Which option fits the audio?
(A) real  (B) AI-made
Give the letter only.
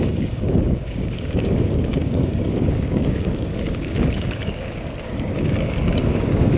B